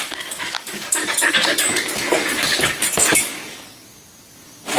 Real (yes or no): no